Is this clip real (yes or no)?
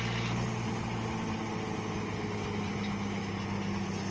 yes